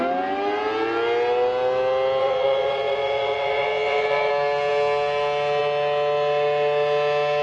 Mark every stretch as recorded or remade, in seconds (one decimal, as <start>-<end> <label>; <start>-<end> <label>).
0.0-2.2 recorded; 2.2-4.3 remade; 4.3-7.4 recorded